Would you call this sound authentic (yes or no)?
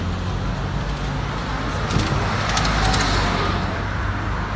yes